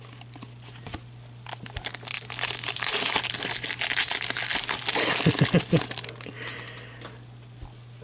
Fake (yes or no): no